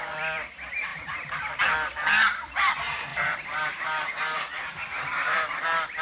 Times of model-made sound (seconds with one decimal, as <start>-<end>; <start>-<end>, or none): 0.0-0.9; 1.4-6.0